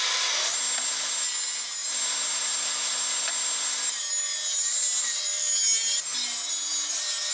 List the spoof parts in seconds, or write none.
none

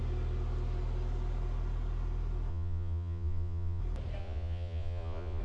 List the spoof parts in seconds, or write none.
2.5-3.8 (vocoder, Vocos); 4.2-5.4

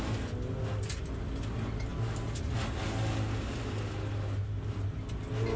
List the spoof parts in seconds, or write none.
none

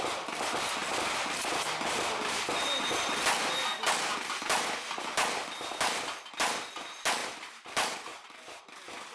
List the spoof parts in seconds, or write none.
7.2-8.6 (vocoder, BigVGAN v2)

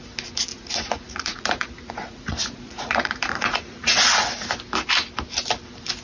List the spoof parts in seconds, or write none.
0.5-4.0 (vocoder, Vocos)

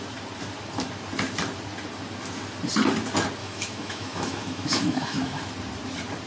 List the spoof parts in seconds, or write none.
3.4-5.4 (autoencoder, DAC-VAE)